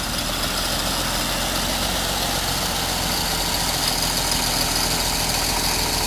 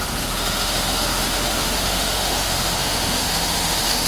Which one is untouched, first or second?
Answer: first